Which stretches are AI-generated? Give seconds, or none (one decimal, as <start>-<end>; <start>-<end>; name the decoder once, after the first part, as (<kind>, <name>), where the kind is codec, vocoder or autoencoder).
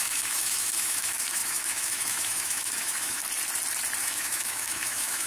0.0-3.2 (autoencoder, DAC-VAE); 4.0-5.3